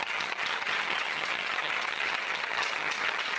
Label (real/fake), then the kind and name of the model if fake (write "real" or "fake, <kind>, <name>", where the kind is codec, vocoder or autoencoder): fake, vocoder, HiFi-GAN